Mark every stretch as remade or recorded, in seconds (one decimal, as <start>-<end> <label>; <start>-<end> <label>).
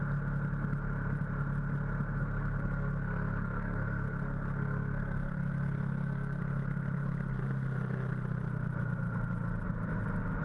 0.0-2.2 recorded; 2.2-6.4 remade; 6.4-10.4 recorded